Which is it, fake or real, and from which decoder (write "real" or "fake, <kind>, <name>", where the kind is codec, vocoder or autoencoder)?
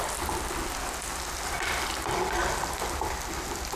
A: real